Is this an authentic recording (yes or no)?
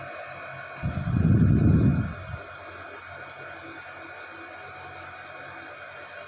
yes